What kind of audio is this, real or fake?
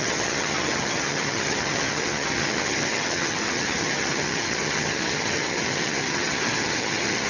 fake